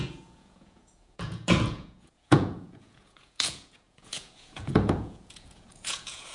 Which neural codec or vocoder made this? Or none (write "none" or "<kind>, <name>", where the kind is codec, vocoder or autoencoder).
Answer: vocoder, Vocos